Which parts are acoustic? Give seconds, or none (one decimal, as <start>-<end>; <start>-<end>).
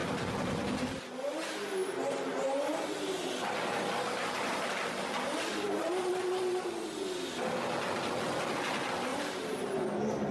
0.0-1.8; 5.9-9.1; 9.9-10.3